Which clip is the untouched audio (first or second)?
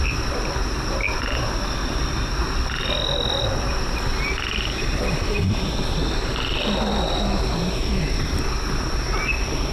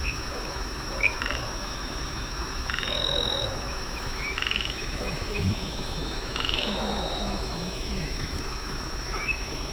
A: first